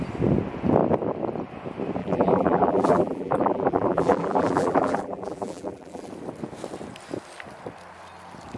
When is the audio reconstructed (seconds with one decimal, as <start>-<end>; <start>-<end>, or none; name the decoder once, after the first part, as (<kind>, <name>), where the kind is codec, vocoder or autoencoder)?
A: 2.0-6.1 (vocoder, BigVGAN v2)